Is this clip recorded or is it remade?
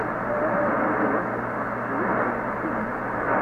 recorded